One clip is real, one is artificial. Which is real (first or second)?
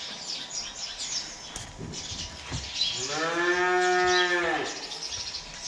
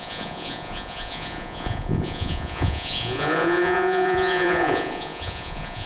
first